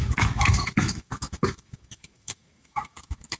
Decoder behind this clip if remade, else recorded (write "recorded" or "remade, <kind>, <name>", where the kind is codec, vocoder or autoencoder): remade, autoencoder, DAC-VAE